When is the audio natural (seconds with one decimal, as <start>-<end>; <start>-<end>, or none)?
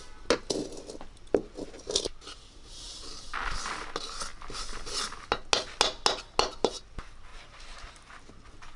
0.0-7.3; 8.3-8.8